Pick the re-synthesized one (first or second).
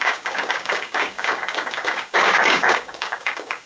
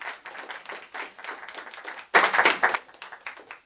first